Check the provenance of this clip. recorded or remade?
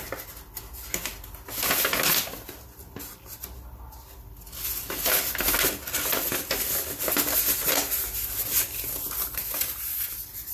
recorded